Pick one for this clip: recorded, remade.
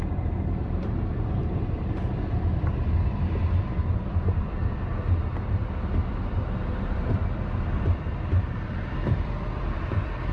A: remade